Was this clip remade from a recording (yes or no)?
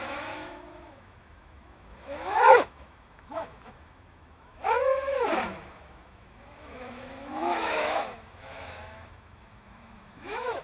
yes